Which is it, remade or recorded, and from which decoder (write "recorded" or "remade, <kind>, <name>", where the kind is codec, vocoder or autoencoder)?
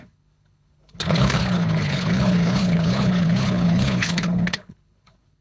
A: remade, codec, HILCodec